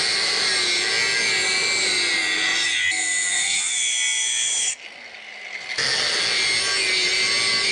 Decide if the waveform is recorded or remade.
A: recorded